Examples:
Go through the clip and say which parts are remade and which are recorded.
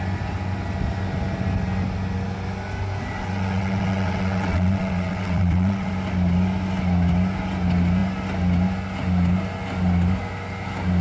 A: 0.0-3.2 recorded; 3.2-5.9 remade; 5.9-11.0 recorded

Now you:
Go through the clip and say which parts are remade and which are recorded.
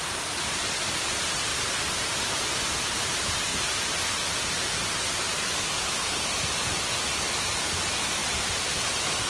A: 0.0-9.3 recorded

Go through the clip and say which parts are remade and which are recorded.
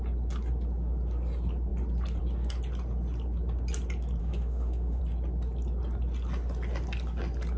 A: 0.0-4.2 recorded; 4.2-5.0 remade; 5.0-7.6 recorded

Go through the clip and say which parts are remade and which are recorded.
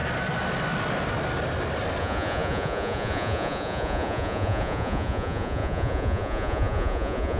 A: 0.0-2.0 recorded; 2.0-7.4 remade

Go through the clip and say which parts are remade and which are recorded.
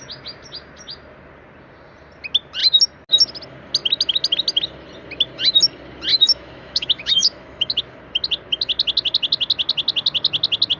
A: 0.0-6.1 recorded; 6.1-7.8 remade; 7.8-10.8 recorded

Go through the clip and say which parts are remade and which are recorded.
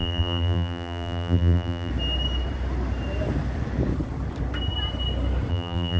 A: 0.0-1.9 remade; 1.9-5.5 recorded; 5.5-6.0 remade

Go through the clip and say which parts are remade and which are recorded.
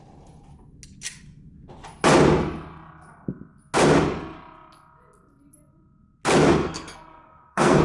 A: 0.0-6.5 recorded; 6.5-7.8 remade